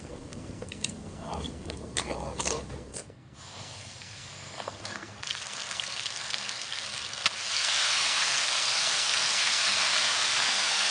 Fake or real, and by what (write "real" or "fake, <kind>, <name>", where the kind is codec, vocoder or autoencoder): fake, codec, SNAC